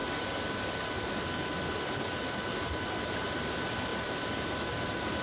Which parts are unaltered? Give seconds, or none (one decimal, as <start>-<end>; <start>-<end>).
0.0-3.1